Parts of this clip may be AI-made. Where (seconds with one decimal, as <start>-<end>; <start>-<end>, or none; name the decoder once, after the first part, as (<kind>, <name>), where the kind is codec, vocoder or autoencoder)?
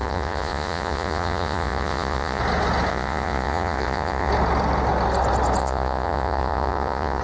0.0-2.4 (vocoder, Vocos); 2.9-4.3; 5.6-7.2